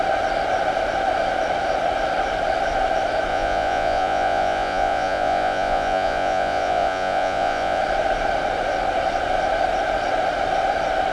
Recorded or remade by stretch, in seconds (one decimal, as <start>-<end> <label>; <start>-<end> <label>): 0.0-3.3 recorded; 3.3-7.8 remade; 7.8-11.1 recorded